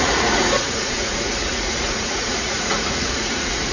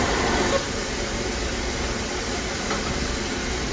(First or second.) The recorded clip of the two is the second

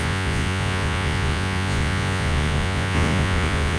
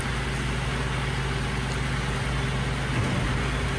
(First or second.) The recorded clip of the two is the second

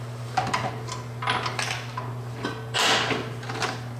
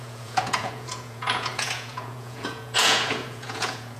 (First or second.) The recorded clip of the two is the first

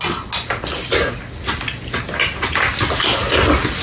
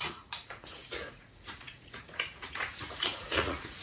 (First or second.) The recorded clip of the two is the first